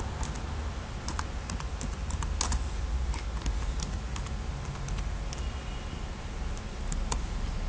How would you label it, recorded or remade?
recorded